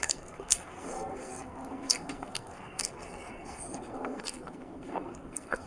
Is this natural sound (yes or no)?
no